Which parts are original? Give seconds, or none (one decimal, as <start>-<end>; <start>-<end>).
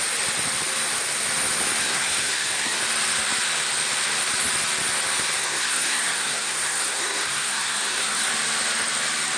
0.0-1.8; 2.8-5.4; 8.3-9.4